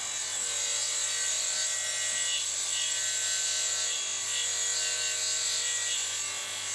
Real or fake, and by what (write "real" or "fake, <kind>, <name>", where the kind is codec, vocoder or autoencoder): real